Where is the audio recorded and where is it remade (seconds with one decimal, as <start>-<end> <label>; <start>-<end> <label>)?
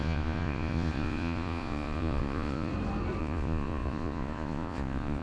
0.0-2.7 remade; 2.7-3.2 recorded; 3.2-5.2 remade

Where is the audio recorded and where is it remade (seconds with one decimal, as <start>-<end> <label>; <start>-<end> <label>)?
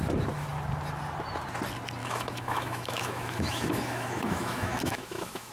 0.0-2.0 recorded; 2.0-5.5 remade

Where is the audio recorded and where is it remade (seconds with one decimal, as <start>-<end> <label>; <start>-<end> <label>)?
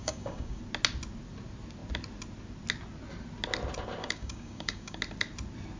0.0-0.6 remade; 0.6-4.0 recorded; 4.0-5.0 remade; 5.0-5.8 recorded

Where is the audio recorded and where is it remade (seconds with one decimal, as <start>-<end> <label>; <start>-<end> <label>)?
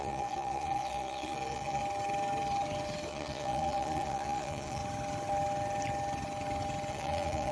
0.0-1.8 remade; 1.8-3.1 recorded; 3.1-4.8 remade; 4.8-6.9 recorded; 6.9-7.5 remade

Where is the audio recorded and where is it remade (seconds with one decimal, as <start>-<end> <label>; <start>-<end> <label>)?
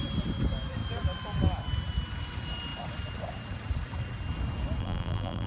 0.0-4.8 recorded; 4.8-5.5 remade